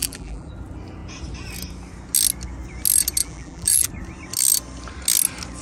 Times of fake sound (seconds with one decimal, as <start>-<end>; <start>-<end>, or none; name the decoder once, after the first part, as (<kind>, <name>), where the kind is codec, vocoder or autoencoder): 0.0-0.5 (vocoder, BigVGAN v2); 3.2-3.9